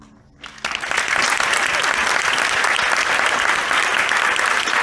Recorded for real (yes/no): yes